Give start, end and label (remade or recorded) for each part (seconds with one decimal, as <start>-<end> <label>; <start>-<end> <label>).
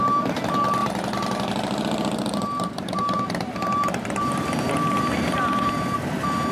0.0-0.8 recorded; 0.8-4.7 remade; 4.7-6.5 recorded